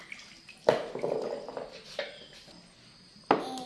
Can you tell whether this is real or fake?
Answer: real